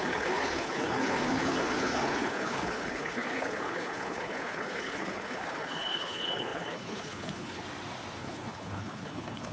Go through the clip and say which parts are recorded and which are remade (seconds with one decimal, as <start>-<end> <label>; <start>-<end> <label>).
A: 0.0-7.6 remade; 7.6-8.2 recorded; 8.2-9.5 remade